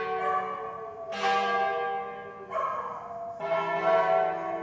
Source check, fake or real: real